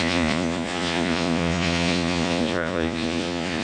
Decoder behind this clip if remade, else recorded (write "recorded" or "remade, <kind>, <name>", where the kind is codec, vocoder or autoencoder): remade, vocoder, Vocos